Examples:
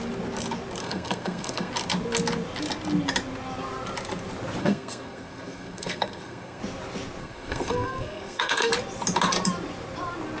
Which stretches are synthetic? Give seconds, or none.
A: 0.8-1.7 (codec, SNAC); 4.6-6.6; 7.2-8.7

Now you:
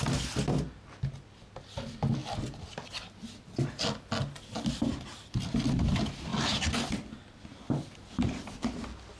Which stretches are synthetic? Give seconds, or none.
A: none

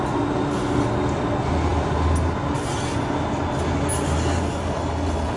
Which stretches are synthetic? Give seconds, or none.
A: none

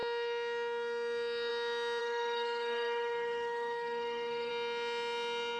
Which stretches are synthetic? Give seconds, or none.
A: 2.0-4.5 (codec, SNAC)

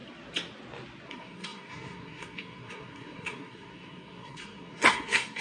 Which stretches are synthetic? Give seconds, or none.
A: 1.1-5.4 (codec, SNAC)

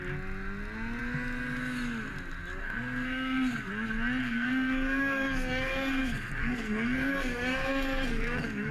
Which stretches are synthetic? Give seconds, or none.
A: 2.6-3.7 (codec, SNAC); 4.2-8.7

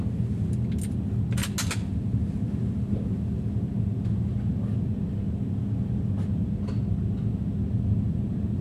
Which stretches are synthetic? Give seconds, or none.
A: none

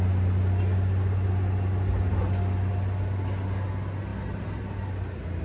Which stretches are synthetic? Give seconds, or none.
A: none